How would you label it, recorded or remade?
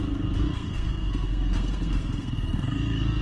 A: remade